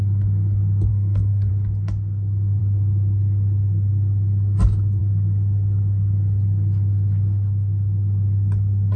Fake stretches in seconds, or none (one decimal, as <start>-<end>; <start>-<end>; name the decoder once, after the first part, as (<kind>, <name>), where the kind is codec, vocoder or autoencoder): 0.9-1.5 (codec, SNAC)